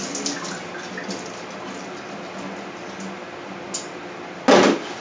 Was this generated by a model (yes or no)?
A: no